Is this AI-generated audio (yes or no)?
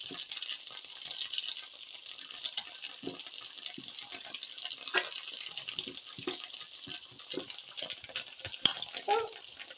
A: no